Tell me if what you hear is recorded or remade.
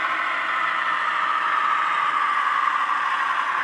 recorded